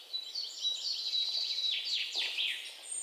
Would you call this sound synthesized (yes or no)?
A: yes